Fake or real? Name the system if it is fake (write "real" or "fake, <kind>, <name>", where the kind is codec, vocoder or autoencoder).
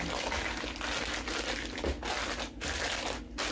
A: real